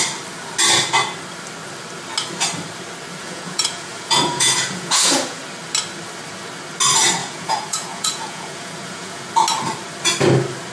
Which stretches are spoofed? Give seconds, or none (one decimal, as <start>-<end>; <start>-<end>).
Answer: 3.2-5.4; 7.2-9.2